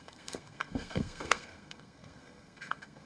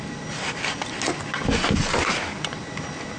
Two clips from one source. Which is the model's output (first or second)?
first